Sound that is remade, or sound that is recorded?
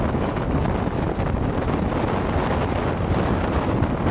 recorded